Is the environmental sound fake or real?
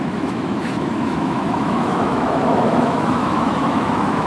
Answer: fake